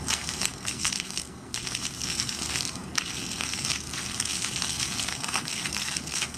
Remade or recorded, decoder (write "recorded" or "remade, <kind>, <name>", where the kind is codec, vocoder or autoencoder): remade, codec, SNAC